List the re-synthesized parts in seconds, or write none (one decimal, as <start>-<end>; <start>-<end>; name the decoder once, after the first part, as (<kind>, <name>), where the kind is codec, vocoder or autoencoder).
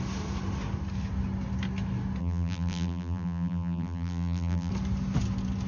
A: 2.2-4.7 (vocoder, BigVGAN v2)